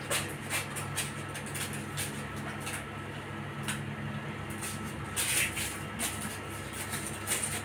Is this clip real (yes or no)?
yes